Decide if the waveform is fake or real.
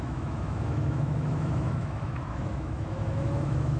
fake